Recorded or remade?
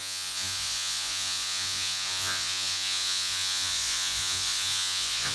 remade